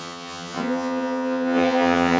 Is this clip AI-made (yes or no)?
yes